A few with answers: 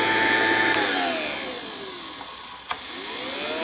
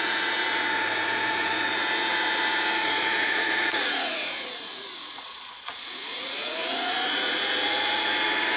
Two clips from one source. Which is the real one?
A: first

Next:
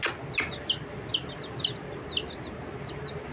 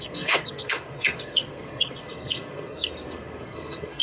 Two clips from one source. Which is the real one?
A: first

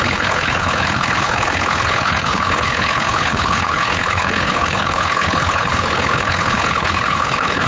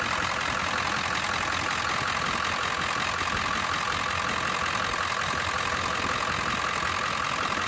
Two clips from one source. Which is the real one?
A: second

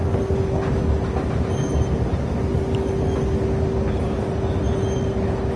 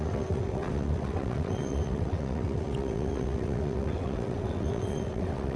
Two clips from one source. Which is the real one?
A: first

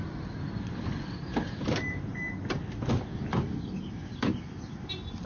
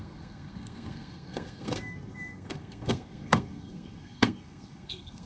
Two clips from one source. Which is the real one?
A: first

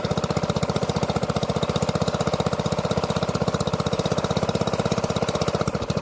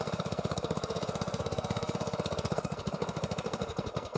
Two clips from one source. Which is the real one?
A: first